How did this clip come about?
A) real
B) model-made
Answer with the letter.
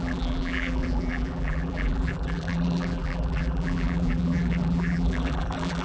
B